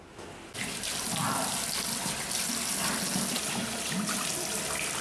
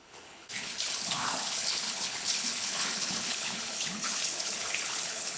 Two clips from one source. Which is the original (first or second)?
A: first